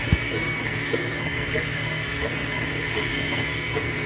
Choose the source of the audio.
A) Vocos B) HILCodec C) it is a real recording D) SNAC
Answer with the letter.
D